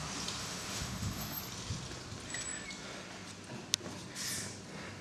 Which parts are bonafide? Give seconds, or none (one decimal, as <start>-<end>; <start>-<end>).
0.0-0.4; 1.4-5.0